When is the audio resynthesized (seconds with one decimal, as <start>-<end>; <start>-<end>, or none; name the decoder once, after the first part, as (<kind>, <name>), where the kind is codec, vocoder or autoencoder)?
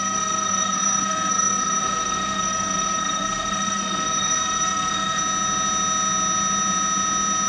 0.0-5.2 (codec, SNAC)